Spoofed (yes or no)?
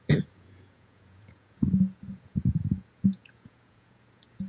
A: yes